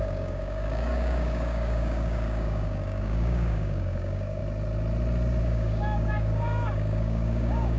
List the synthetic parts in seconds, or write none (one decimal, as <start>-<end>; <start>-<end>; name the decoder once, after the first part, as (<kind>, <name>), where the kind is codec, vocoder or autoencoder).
0.0-4.4 (codec, DAC); 5.4-7.8